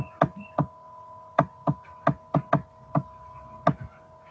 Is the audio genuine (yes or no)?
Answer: yes